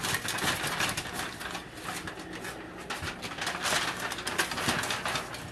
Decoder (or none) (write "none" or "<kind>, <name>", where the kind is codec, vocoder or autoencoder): none